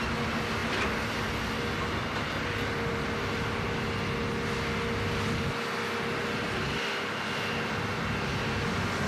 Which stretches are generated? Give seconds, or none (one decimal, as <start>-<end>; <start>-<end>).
none